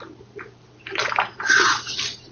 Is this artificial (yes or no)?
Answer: no